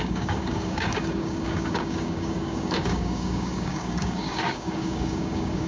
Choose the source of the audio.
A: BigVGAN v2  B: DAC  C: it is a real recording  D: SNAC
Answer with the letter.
B